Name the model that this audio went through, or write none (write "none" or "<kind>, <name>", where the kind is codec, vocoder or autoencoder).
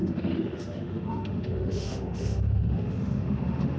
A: autoencoder, DAC-VAE